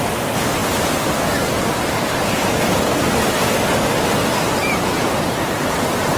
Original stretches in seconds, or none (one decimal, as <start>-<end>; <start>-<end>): 0.0-4.6; 5.7-6.2